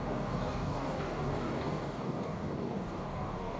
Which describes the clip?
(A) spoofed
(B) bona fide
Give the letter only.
A